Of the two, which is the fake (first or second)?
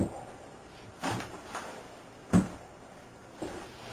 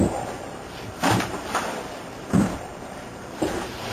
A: second